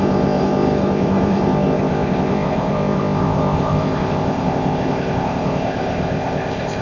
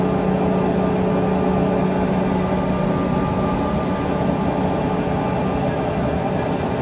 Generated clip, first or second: first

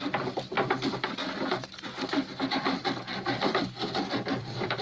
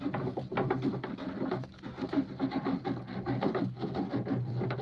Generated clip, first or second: first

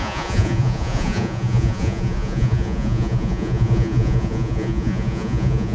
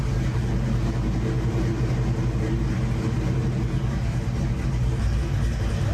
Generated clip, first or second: first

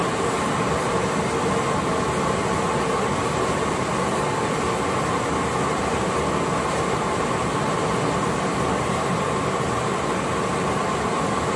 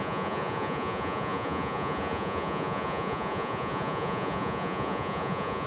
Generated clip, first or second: second